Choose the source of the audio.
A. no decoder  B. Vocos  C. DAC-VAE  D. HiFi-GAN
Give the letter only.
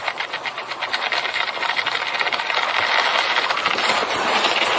A